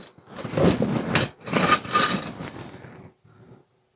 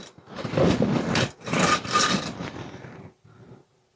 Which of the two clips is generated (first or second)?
second